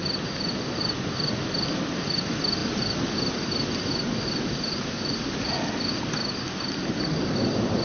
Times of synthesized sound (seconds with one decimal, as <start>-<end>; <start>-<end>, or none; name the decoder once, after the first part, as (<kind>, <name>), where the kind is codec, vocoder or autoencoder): none